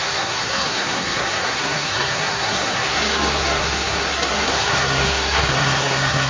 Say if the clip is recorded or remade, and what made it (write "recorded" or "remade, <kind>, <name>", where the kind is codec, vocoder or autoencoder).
remade, codec, SNAC